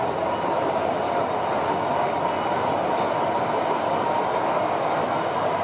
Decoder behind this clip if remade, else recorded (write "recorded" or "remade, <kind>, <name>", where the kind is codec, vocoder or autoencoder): recorded